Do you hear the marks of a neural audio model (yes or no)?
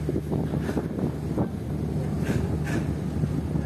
no